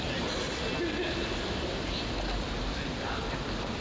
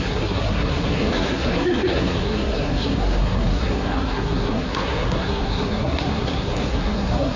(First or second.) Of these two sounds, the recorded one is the first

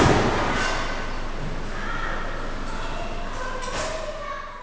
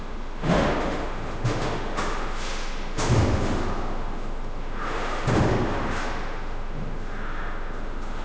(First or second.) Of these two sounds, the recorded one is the first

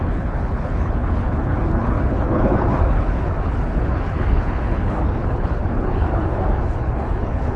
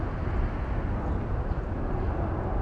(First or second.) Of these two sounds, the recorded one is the second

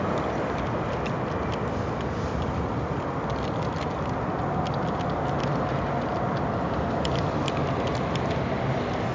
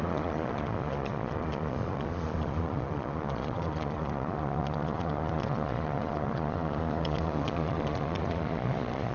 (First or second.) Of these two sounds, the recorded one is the first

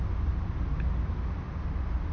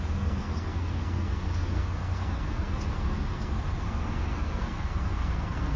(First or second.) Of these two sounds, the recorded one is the first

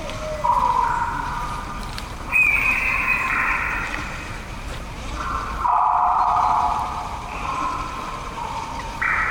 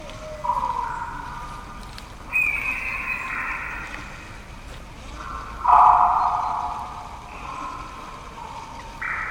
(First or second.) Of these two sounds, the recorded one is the second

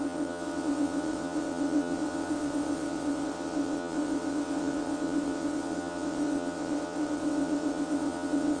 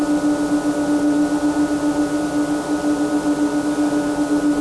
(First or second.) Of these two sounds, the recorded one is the second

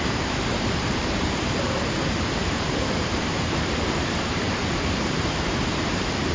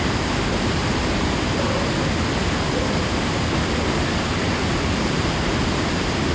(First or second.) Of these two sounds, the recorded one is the second